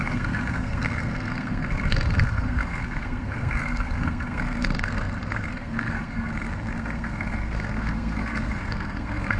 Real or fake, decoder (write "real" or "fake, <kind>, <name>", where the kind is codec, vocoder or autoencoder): fake, codec, SNAC